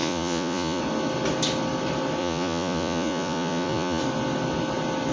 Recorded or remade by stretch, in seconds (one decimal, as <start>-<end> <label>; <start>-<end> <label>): 0.0-0.8 remade; 0.8-2.2 recorded; 2.2-4.0 remade; 4.0-5.1 recorded